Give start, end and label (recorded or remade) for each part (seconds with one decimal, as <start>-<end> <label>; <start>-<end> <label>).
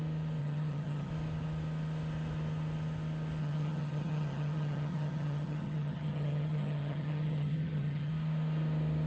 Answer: 0.0-0.4 recorded; 0.4-1.1 remade; 1.1-3.4 recorded; 3.4-8.1 remade; 8.1-9.1 recorded